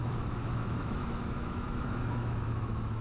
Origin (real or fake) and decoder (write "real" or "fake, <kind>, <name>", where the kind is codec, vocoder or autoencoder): fake, autoencoder, DAC-VAE